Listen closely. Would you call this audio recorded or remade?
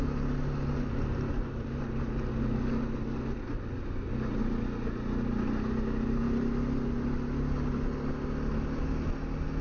recorded